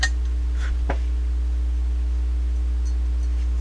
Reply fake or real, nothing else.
real